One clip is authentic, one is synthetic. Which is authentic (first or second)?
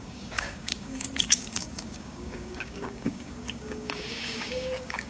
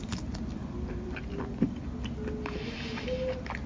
second